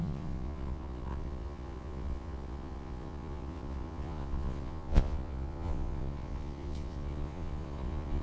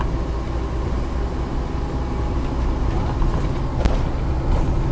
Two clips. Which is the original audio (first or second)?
second